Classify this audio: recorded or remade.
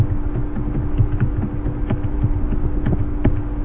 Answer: recorded